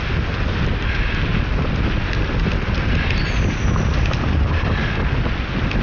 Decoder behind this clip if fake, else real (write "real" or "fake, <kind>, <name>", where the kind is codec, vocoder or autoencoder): real